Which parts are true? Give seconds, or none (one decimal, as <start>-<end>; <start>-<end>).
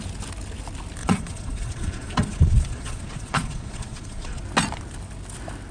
0.0-1.0; 4.4-5.7